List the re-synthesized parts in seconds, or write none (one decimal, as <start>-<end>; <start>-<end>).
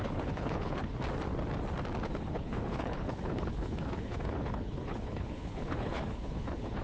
0.0-0.9; 2.0-6.8